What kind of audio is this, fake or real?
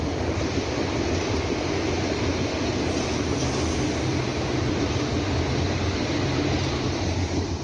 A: real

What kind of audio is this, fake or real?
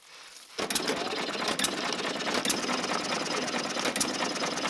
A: real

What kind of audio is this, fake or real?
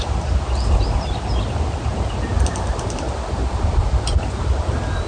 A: real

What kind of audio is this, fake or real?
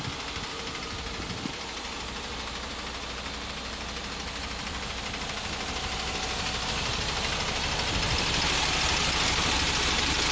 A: real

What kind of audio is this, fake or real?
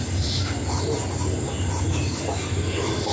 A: real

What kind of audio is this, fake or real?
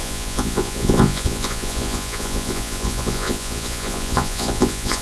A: fake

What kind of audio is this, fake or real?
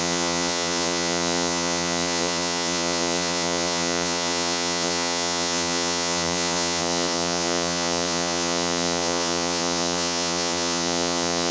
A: fake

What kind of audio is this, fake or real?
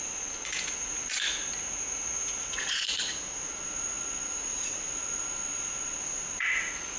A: fake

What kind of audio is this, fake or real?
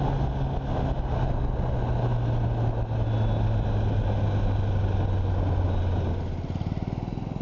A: real